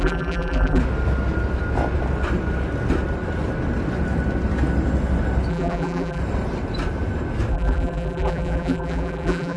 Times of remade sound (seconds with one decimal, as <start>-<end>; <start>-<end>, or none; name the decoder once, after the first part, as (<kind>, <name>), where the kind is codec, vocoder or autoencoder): 0.0-0.8 (vocoder, BigVGAN v2); 5.5-6.2; 7.5-9.6